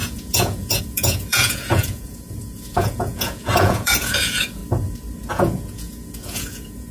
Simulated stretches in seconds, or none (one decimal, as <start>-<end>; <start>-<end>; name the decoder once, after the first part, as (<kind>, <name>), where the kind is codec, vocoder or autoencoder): 0.0-4.6 (vocoder, Vocos); 5.3-6.9